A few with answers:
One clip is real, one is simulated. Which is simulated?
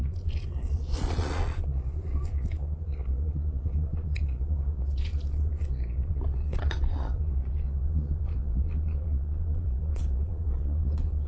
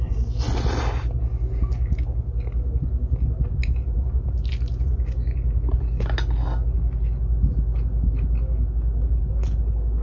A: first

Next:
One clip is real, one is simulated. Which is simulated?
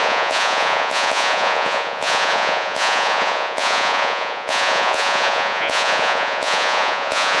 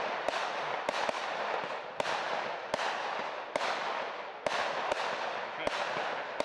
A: first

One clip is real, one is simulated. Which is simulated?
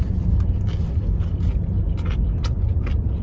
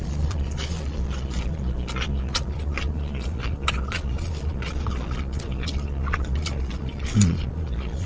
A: second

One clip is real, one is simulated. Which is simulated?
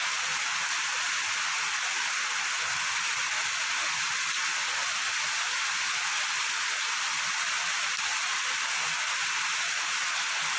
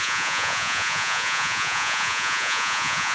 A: second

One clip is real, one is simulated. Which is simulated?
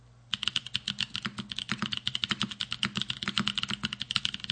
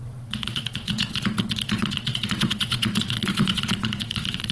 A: second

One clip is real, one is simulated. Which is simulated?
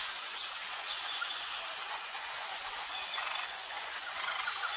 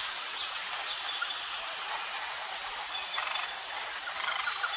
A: first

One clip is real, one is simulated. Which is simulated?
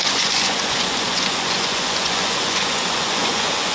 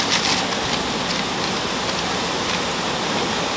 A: first